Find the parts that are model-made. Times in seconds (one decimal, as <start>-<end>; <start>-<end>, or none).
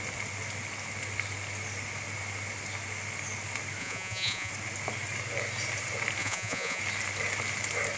3.8-4.5; 6.2-6.8